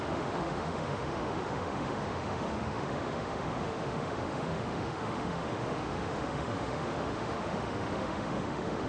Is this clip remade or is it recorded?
remade